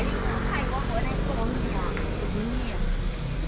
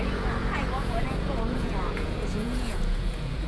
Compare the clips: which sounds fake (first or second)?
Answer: second